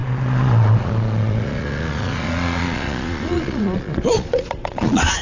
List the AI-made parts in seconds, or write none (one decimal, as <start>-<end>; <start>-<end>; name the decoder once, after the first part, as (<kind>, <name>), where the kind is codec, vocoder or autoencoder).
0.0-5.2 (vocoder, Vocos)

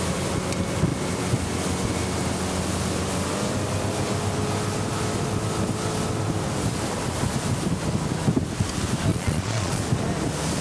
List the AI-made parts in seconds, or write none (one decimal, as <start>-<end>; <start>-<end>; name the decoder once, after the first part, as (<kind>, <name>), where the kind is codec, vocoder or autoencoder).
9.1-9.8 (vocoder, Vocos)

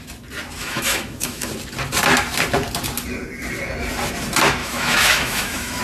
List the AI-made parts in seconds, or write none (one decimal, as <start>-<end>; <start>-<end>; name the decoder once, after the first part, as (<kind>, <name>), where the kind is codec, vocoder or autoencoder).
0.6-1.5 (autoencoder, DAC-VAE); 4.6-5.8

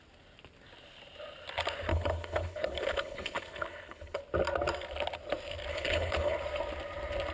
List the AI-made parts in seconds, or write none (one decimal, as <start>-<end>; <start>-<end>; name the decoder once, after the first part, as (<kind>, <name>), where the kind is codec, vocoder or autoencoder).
1.9-4.2 (codec, HILCodec); 5.7-6.4

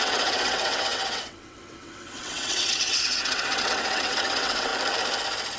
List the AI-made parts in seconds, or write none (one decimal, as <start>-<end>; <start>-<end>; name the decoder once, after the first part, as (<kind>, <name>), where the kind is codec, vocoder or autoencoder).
0.0-4.7 (vocoder, WaveNeXt)

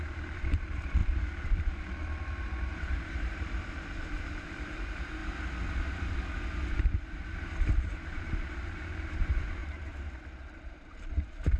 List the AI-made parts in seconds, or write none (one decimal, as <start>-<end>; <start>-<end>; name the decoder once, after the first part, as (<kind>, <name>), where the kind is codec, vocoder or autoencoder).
0.0-1.0 (vocoder, BigVGAN v2); 2.7-5.2; 6.8-11.6

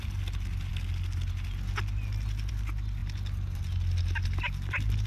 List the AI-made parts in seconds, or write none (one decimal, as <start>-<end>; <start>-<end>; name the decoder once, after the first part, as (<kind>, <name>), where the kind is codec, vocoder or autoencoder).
none